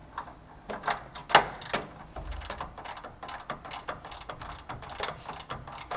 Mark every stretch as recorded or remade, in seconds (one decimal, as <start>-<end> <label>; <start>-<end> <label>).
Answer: 0.0-6.0 recorded